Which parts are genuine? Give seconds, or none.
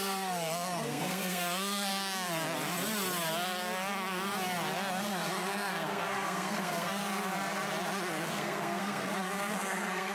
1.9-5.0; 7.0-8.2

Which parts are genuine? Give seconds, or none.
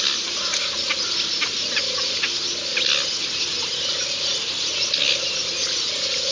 0.0-6.3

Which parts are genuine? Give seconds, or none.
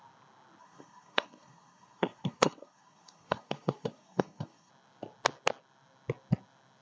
0.0-0.6; 4.7-6.8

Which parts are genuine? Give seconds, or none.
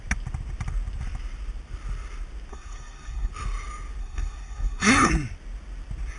0.0-2.5; 3.3-4.0; 5.1-6.2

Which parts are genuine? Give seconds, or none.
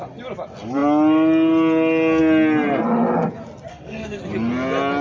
0.0-3.7; 4.2-5.0